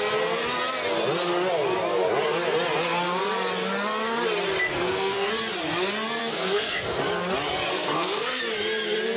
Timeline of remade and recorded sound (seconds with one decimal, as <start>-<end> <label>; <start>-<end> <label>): 0.0-4.7 recorded; 4.7-5.3 remade; 5.3-6.2 recorded; 6.2-7.0 remade; 7.0-7.7 recorded; 7.7-8.4 remade; 8.4-9.2 recorded